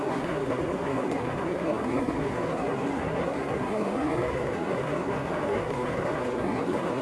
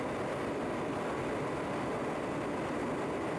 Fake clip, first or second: first